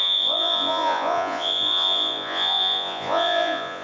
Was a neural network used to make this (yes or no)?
yes